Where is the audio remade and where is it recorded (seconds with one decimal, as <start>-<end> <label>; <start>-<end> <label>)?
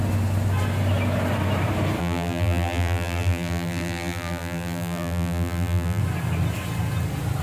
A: 0.0-2.0 recorded; 2.0-6.0 remade; 6.0-7.4 recorded